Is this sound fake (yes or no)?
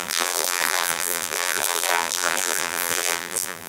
yes